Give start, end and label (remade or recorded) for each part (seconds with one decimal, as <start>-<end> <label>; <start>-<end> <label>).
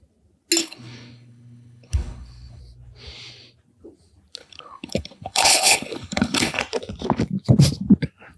0.0-0.6 recorded; 0.6-2.6 remade; 2.6-4.4 recorded; 4.4-6.6 remade; 6.6-8.4 recorded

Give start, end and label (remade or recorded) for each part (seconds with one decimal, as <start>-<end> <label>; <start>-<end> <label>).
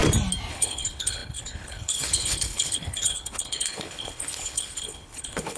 0.0-0.5 recorded; 0.5-5.6 remade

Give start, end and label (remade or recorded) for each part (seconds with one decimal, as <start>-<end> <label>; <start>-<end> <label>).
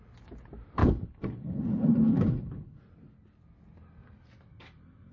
0.0-0.8 recorded; 0.8-2.8 remade; 2.8-5.1 recorded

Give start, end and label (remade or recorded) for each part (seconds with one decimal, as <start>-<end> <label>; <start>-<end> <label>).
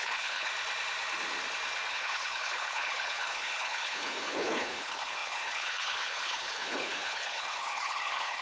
0.0-0.5 remade; 0.5-1.9 recorded; 1.9-8.4 remade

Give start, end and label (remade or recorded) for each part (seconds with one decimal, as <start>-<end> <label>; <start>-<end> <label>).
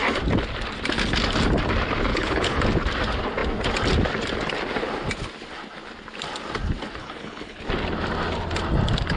0.0-2.1 recorded; 2.1-2.6 remade; 2.6-7.0 recorded; 7.0-7.6 remade; 7.6-9.2 recorded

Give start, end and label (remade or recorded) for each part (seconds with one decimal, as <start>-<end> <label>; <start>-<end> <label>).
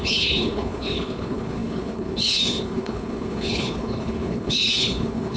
0.0-5.4 remade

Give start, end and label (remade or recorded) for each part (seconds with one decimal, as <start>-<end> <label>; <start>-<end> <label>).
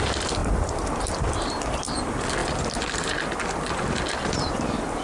0.0-5.0 recorded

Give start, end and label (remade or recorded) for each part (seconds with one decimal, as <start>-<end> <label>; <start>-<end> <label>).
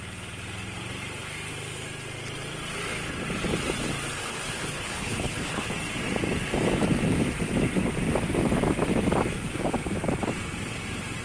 0.0-4.2 recorded; 4.2-5.7 remade; 5.7-11.2 recorded